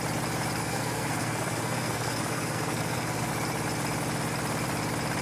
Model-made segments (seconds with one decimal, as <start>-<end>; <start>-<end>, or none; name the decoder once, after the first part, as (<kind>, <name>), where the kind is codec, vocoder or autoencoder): 0.6-3.3 (codec, SNAC)